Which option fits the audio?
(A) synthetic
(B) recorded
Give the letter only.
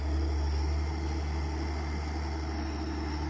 B